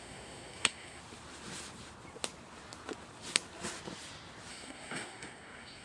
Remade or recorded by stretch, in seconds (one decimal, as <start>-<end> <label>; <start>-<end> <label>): 0.0-1.0 remade; 1.0-4.5 recorded; 4.5-5.8 remade